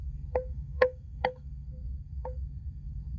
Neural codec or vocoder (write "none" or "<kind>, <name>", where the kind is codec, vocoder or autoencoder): codec, SNAC